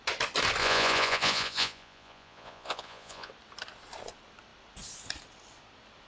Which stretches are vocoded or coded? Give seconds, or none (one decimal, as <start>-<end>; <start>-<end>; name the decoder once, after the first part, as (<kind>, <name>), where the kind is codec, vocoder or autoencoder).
0.6-3.3 (vocoder, Vocos)